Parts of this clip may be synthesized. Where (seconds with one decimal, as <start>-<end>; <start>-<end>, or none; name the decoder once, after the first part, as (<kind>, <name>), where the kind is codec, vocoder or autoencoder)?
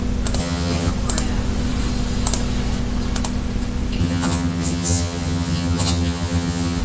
0.4-0.9 (vocoder, HiFi-GAN); 4.0-6.8